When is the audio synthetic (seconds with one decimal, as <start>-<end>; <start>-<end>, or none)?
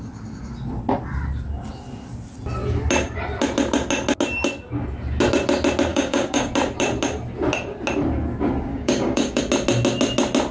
5.9-6.5; 8.7-9.4